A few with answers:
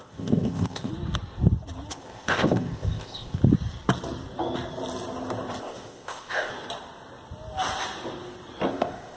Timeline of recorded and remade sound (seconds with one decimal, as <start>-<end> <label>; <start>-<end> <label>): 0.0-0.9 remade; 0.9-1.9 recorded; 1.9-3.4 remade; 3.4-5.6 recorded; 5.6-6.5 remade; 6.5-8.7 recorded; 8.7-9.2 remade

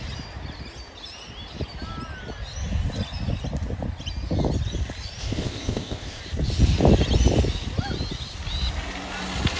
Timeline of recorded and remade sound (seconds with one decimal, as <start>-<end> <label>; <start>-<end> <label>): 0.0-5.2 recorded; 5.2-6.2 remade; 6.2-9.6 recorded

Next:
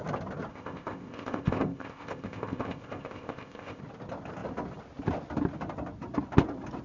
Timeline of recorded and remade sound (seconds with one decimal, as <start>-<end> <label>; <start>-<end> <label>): 0.0-0.5 recorded; 0.5-3.8 remade; 3.8-6.8 recorded